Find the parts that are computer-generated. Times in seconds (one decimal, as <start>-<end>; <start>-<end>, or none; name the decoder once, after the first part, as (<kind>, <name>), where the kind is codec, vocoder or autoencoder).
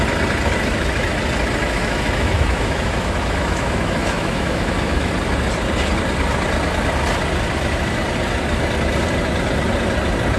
1.6-5.1 (autoencoder, DAC-VAE)